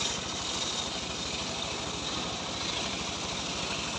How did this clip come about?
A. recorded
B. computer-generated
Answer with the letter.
A